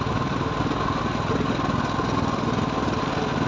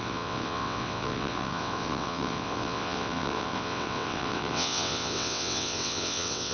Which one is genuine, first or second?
first